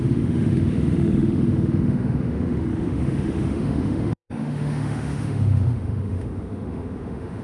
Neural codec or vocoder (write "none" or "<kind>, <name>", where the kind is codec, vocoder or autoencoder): autoencoder, DAC-VAE